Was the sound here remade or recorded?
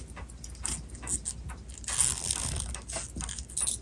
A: recorded